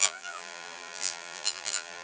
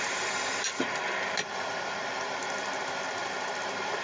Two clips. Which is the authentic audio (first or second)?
second